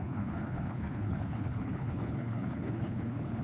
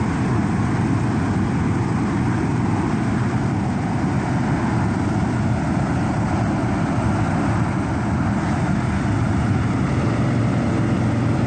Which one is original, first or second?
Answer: second